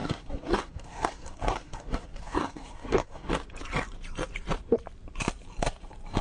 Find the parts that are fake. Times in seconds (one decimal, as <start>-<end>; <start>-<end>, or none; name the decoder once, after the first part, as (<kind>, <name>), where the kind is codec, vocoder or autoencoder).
0.0-3.3 (codec, SNAC)